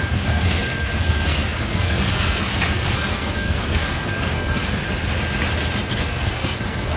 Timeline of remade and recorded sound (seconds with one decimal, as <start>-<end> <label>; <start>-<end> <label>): 0.0-4.6 remade; 4.6-5.9 recorded; 5.9-7.0 remade